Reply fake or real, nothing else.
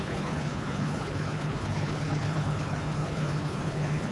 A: fake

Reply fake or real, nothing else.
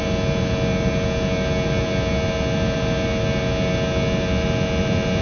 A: real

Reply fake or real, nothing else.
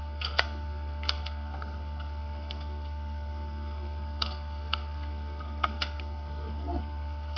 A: fake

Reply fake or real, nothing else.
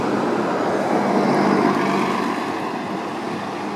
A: real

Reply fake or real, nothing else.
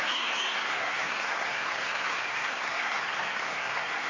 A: fake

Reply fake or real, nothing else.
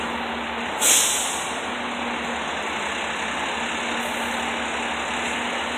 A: real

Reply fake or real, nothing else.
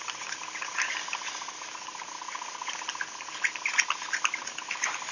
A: real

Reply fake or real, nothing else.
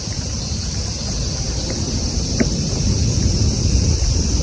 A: fake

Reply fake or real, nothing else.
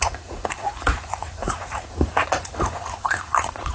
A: fake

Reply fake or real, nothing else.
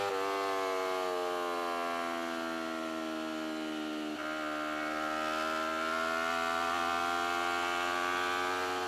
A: real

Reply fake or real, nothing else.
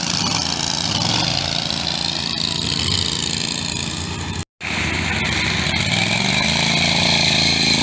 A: real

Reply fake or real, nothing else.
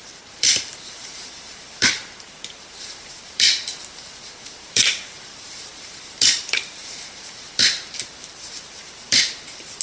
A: fake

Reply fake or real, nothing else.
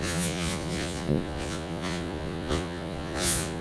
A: fake